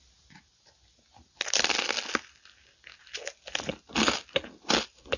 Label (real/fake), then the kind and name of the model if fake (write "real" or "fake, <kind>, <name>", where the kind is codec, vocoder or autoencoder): real